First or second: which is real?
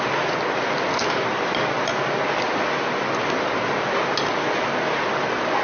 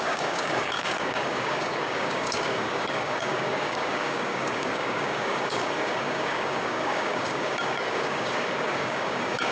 first